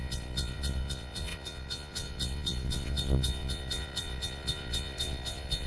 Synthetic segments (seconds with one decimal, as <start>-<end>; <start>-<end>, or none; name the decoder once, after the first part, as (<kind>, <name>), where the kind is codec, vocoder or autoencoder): 0.0-5.7 (vocoder, Vocos)